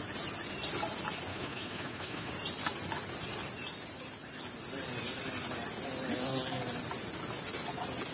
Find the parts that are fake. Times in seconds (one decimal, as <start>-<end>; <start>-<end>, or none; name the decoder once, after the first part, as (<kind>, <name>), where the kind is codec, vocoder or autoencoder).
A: 1.3-2.3 (autoencoder, DAC-VAE)